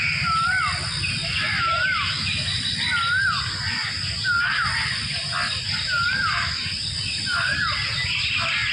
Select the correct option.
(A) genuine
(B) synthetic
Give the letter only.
A